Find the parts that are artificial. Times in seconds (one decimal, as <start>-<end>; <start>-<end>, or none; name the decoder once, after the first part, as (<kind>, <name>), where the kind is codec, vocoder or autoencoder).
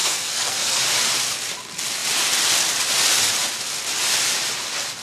0.0-0.8 (codec, SNAC)